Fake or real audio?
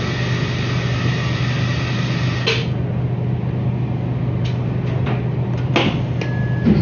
real